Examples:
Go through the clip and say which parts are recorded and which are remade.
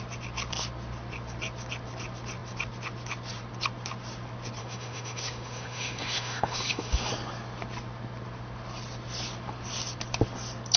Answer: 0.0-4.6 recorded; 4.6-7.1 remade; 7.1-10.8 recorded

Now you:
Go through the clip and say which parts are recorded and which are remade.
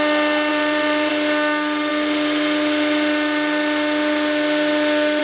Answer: 0.0-0.5 recorded; 0.5-1.1 remade; 1.1-5.2 recorded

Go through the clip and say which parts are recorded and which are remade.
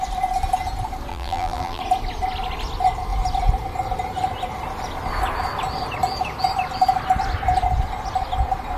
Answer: 0.0-1.1 recorded; 1.1-1.8 remade; 1.8-8.8 recorded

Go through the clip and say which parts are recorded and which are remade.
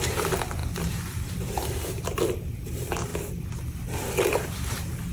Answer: 0.0-3.1 remade; 3.1-4.4 recorded; 4.4-5.1 remade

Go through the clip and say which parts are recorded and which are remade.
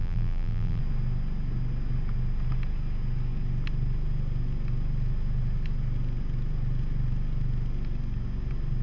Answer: 0.0-0.8 remade; 0.8-8.8 recorded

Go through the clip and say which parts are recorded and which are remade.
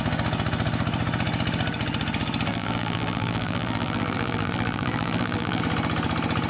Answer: 0.0-2.5 recorded; 2.5-5.6 remade; 5.6-6.5 recorded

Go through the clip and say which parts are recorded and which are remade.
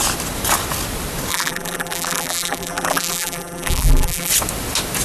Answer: 0.0-1.3 recorded; 1.3-4.3 remade; 4.3-5.0 recorded